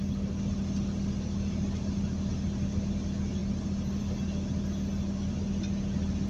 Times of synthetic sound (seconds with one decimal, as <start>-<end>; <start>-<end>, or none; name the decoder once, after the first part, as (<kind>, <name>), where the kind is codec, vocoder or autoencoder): none